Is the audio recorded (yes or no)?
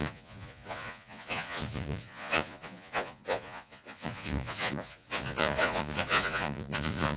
no